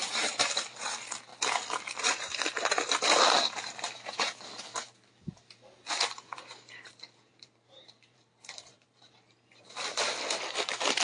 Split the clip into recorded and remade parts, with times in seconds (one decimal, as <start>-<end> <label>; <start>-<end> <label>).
0.0-1.3 remade; 1.3-2.0 recorded; 2.0-11.0 remade